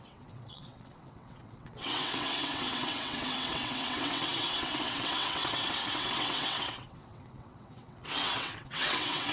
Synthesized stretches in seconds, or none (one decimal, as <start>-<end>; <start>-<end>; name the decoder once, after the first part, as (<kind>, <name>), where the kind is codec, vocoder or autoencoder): 0.0-9.3 (vocoder, WaveNeXt)